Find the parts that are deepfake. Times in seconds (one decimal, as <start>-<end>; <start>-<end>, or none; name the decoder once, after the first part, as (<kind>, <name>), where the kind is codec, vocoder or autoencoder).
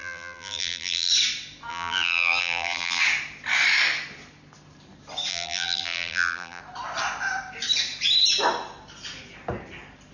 0.0-1.1 (vocoder, BigVGAN v2); 1.7-3.0; 5.3-6.6